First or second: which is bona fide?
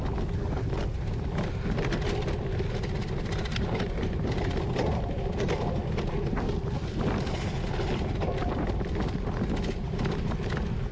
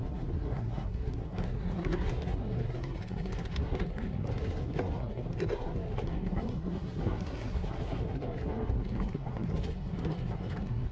first